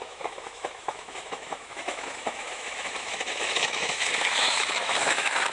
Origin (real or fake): fake